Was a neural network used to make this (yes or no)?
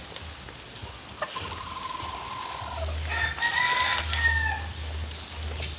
no